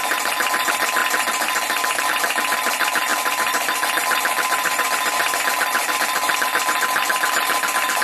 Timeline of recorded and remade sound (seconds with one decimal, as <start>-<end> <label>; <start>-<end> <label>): 0.0-3.1 recorded; 3.1-6.3 remade; 6.3-8.0 recorded